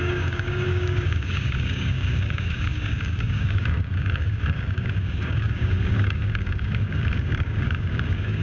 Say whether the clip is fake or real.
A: fake